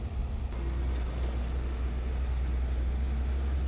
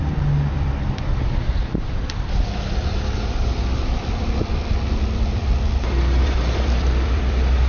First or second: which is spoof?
second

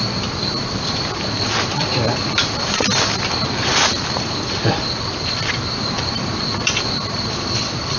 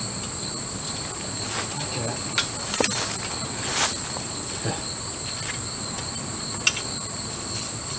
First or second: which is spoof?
first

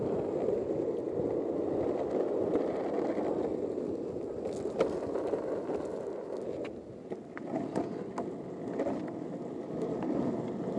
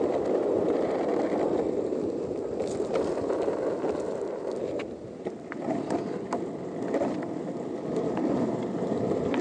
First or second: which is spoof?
second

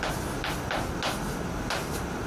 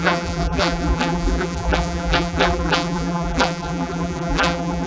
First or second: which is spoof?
second